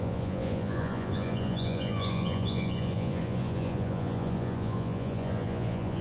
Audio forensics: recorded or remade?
remade